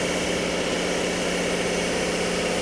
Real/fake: real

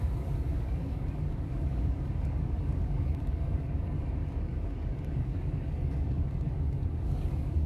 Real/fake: fake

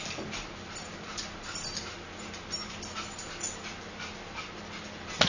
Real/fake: real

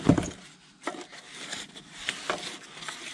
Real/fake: real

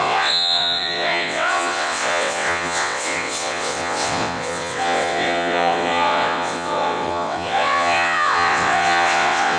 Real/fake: fake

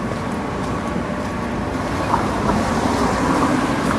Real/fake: real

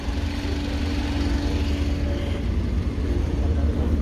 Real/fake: real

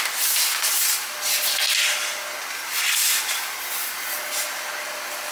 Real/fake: real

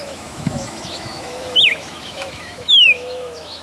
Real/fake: fake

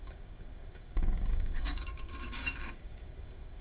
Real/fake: fake